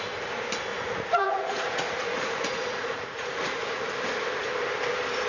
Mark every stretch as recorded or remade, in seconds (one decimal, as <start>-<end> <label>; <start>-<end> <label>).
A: 0.0-0.7 recorded; 0.7-3.9 remade; 3.9-5.3 recorded